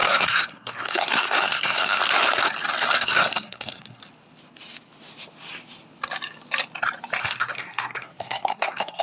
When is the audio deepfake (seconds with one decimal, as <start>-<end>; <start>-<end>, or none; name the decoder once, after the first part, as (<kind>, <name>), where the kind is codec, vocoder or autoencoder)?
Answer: 0.0-2.0 (codec, SNAC); 3.0-4.0; 7.2-9.0